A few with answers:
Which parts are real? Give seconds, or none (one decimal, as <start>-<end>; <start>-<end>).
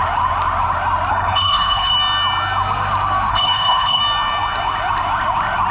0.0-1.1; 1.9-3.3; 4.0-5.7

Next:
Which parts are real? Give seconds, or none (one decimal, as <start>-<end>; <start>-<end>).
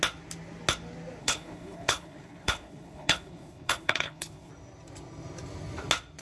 0.0-1.2; 4.5-6.2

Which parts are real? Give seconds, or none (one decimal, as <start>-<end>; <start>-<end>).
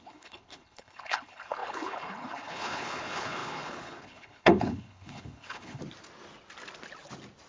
5.8-7.5